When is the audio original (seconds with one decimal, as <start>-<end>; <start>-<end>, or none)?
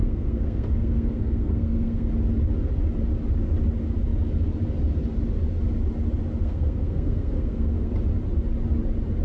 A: 2.1-6.4; 7.9-9.2